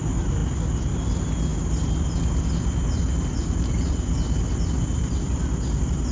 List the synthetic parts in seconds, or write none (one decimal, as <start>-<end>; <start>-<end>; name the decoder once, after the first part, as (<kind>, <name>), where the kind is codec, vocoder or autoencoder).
none